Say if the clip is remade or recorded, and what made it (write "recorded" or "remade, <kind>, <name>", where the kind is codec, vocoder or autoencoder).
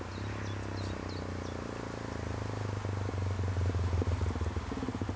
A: recorded